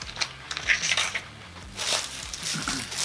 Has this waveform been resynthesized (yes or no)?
no